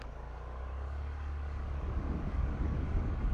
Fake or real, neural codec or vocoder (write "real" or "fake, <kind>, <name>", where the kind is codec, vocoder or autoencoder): fake, codec, DAC